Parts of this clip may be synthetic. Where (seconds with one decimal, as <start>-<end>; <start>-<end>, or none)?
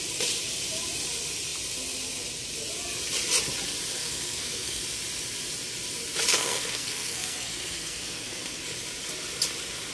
4.0-4.8; 6.3-8.6